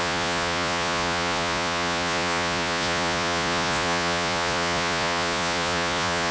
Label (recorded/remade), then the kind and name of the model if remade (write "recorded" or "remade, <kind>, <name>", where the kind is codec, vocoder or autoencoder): remade, vocoder, Vocos